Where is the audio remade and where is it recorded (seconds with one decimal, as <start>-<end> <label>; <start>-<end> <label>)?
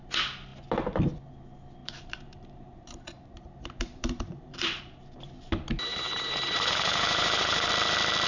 0.0-1.8 recorded; 1.8-4.8 remade; 4.8-5.9 recorded; 5.9-7.7 remade; 7.7-8.3 recorded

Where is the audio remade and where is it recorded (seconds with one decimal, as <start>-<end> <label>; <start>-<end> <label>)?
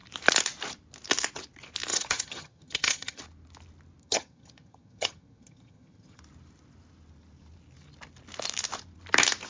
0.0-1.9 recorded; 1.9-3.2 remade; 3.2-4.0 recorded; 4.0-6.2 remade; 6.2-9.5 recorded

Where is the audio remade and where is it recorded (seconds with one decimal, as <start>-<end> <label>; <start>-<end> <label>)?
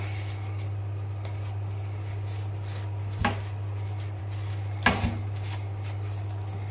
0.0-6.7 recorded